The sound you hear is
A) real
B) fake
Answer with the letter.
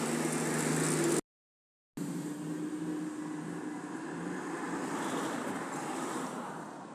A